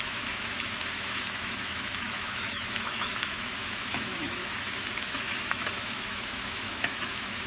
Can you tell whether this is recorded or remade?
remade